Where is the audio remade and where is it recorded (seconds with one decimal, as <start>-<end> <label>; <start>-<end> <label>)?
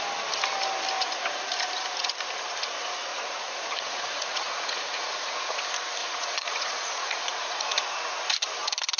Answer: 0.0-3.1 recorded; 3.1-5.6 remade; 5.6-6.0 recorded; 6.0-7.7 remade; 7.7-9.0 recorded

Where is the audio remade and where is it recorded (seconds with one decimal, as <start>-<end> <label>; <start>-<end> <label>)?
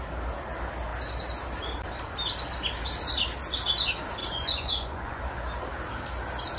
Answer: 0.0-4.2 recorded; 4.2-5.2 remade; 5.2-6.6 recorded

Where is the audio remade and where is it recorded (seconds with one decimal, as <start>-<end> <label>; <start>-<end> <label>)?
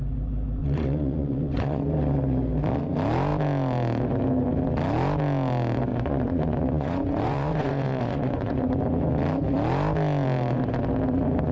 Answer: 0.0-0.6 recorded; 0.6-1.8 remade; 1.8-5.9 recorded; 5.9-8.7 remade; 8.7-11.5 recorded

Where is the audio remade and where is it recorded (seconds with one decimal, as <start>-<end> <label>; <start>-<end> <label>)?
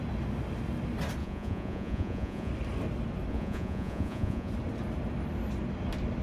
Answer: 0.0-1.2 recorded; 1.2-2.5 remade; 2.5-3.3 recorded; 3.3-4.5 remade; 4.5-6.2 recorded